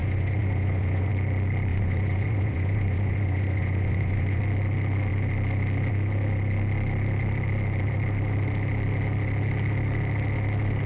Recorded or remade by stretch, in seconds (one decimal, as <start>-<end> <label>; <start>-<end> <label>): 0.0-1.1 remade; 1.1-1.7 recorded; 1.7-4.4 remade; 4.4-10.9 recorded